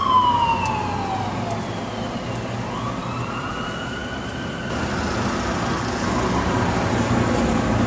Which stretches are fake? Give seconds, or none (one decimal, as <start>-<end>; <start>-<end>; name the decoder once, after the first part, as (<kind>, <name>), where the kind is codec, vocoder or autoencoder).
3.0-3.5 (vocoder, BigVGAN v2); 4.0-5.0